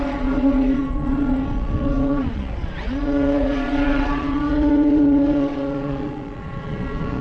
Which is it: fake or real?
fake